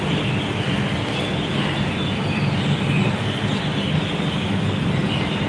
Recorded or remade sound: recorded